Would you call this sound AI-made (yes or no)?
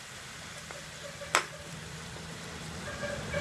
yes